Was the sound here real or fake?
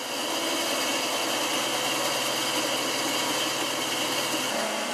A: real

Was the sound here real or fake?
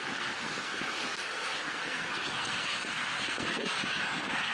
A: fake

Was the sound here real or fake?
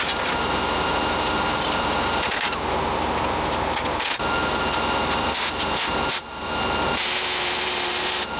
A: real